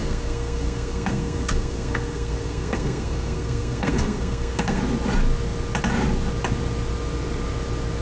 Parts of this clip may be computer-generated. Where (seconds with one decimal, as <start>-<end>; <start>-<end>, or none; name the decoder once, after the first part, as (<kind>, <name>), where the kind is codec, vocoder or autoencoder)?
0.0-4.8 (codec, SNAC)